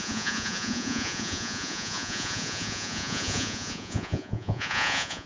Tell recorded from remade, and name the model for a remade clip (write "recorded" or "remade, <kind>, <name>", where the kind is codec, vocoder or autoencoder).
remade, vocoder, Vocos